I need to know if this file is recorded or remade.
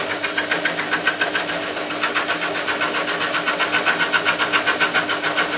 recorded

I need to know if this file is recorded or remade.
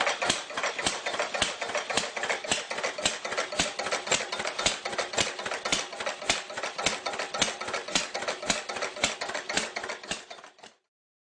recorded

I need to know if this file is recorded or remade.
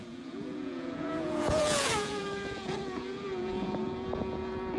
remade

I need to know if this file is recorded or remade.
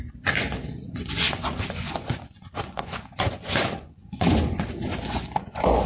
remade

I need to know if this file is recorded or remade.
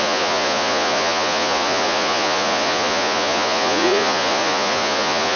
remade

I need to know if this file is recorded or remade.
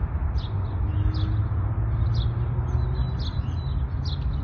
recorded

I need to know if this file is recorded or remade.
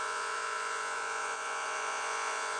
remade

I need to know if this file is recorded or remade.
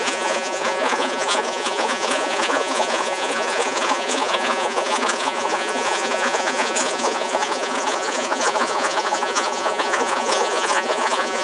remade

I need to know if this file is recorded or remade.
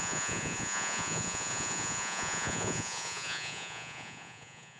remade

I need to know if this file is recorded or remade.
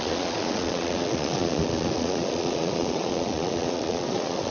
remade